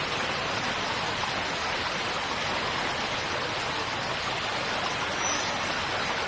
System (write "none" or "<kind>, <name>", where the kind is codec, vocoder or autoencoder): none